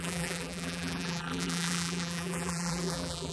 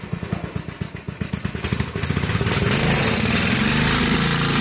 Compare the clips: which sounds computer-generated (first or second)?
first